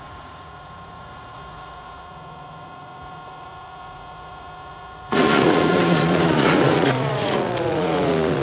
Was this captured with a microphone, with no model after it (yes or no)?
no